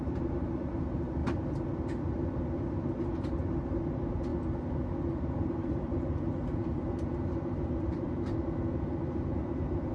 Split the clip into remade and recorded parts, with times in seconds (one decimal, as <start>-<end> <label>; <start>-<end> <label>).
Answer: 0.0-4.3 remade; 4.3-5.1 recorded; 5.1-9.9 remade